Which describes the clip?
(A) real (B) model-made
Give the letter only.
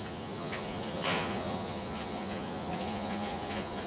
B